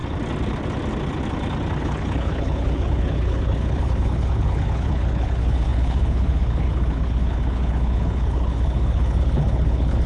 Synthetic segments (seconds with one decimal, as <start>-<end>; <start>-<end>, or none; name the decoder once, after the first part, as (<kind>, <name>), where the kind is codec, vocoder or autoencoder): 1.8-10.1 (codec, HILCodec)